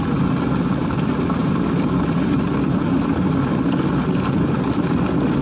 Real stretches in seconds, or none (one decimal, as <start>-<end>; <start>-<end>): 0.0-5.4